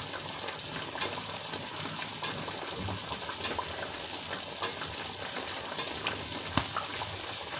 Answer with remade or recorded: recorded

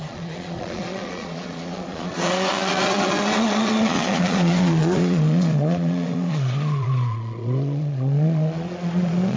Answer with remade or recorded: remade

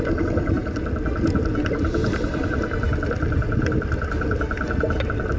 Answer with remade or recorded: recorded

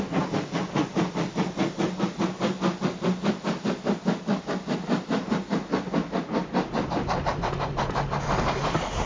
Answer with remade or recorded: recorded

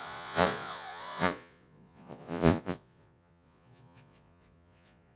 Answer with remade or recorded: remade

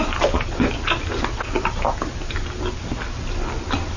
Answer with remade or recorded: recorded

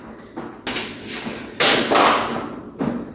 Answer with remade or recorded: recorded